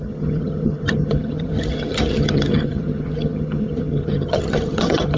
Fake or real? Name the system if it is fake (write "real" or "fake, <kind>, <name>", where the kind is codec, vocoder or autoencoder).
fake, vocoder, HiFi-GAN